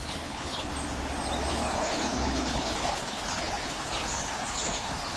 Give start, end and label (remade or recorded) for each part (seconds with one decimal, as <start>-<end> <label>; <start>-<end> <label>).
0.0-0.7 remade; 0.7-1.5 recorded; 1.5-5.2 remade